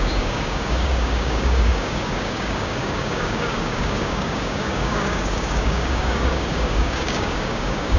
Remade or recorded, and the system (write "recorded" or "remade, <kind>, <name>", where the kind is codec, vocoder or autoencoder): remade, codec, DAC